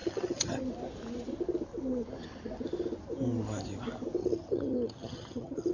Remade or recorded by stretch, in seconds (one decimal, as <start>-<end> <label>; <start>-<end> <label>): 0.0-0.6 remade; 0.6-4.2 recorded; 4.2-5.7 remade